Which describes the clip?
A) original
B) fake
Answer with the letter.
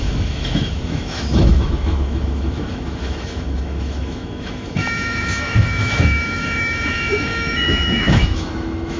B